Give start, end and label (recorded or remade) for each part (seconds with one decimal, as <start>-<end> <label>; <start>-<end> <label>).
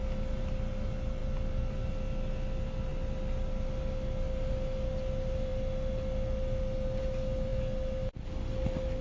0.0-9.0 recorded